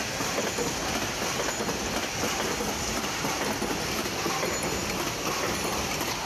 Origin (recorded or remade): recorded